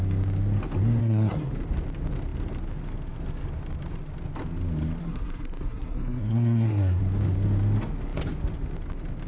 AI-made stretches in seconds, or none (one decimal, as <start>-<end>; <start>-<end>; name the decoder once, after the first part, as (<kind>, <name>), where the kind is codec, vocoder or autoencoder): 1.0-1.5 (codec, SNAC); 5.0-7.0